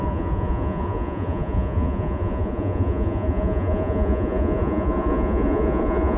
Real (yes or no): no